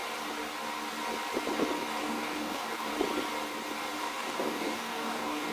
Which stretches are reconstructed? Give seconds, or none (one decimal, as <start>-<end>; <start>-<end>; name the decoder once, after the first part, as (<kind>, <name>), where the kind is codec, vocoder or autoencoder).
2.0-2.9 (codec, DAC); 4.0-5.5